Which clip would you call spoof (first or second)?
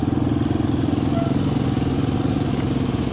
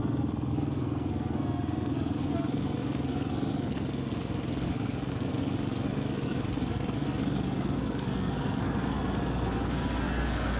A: second